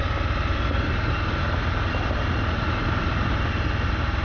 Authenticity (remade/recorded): recorded